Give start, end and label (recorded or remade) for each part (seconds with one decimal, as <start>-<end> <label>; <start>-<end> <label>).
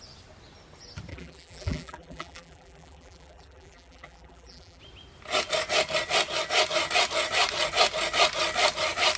0.0-1.1 recorded; 1.1-4.8 remade; 4.8-9.2 recorded